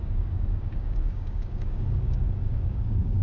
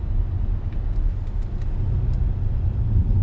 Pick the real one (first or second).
second